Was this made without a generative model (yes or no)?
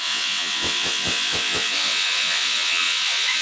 no